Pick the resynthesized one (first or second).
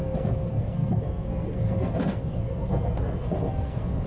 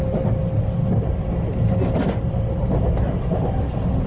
first